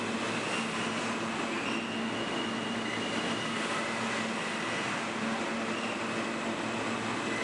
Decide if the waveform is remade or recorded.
recorded